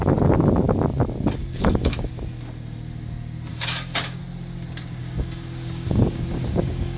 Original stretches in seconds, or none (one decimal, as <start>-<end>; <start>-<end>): 0.0-1.4; 2.1-3.5; 4.2-5.0